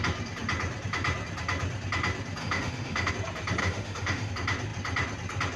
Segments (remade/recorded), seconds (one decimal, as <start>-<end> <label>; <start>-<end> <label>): 0.0-2.4 recorded; 2.4-3.1 remade; 3.1-3.6 recorded; 3.6-4.3 remade; 4.3-5.6 recorded